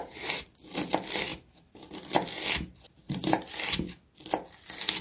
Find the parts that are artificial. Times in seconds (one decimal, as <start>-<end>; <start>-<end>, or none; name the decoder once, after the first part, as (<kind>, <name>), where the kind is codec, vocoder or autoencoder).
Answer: none